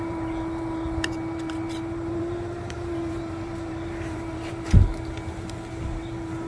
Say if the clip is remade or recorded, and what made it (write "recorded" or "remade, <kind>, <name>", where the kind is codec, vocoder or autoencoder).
remade, vocoder, BigVGAN v2